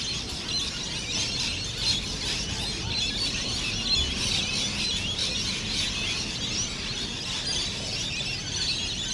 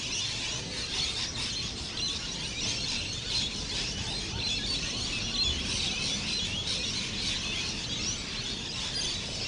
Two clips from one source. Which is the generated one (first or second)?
second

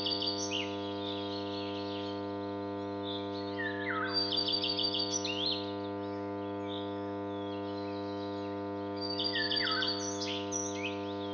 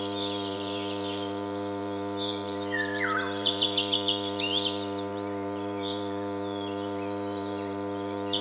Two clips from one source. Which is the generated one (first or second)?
second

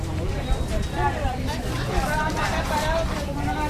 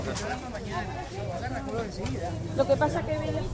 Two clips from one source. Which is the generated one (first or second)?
first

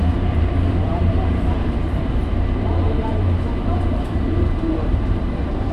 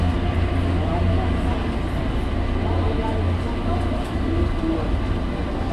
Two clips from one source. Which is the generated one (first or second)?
first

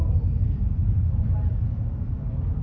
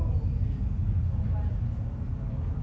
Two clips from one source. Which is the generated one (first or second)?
first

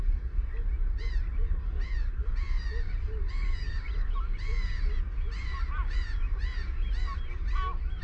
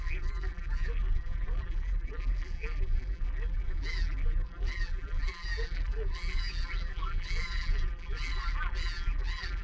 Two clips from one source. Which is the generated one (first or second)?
second